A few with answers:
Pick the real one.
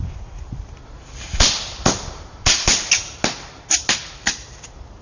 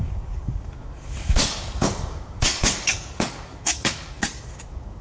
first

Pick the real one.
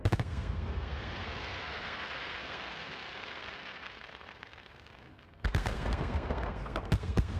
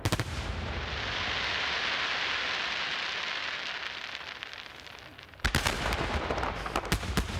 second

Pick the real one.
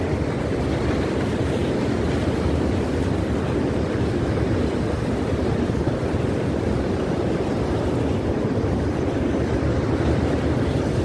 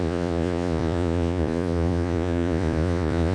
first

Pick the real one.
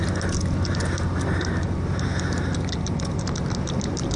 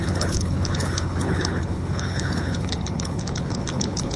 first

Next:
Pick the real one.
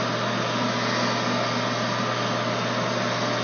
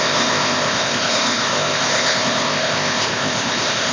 first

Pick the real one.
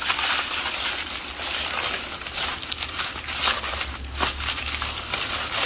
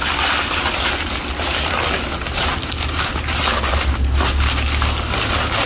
second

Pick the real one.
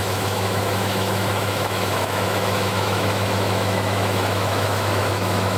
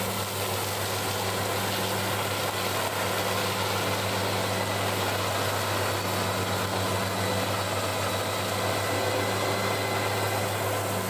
second